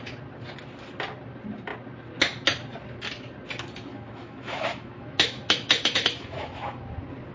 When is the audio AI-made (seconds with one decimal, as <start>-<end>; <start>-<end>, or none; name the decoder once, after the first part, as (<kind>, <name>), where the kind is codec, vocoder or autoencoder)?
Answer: 3.9-6.8 (autoencoder, DAC-VAE)